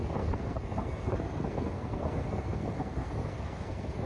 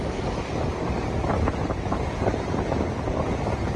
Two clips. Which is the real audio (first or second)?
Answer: second